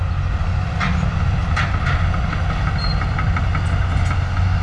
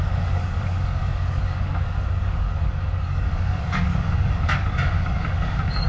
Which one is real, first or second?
first